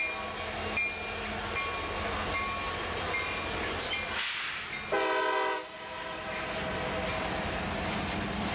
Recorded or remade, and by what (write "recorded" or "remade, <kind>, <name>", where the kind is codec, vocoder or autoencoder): recorded